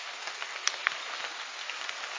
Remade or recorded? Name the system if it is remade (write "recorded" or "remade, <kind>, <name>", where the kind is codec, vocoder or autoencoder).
recorded